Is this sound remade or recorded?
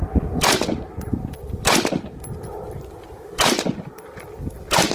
remade